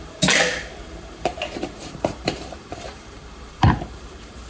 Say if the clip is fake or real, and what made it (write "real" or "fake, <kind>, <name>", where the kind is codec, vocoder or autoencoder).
fake, vocoder, BigVGAN v2